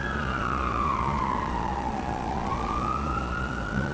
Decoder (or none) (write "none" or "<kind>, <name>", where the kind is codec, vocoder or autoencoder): vocoder, Vocos